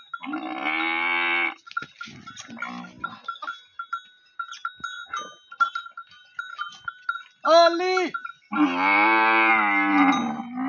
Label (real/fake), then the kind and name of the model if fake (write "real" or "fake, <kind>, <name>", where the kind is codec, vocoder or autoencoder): real